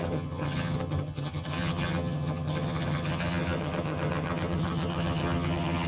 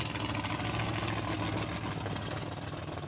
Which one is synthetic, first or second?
first